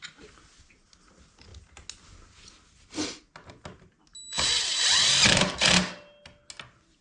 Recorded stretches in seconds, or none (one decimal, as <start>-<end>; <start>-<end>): 0.0-7.0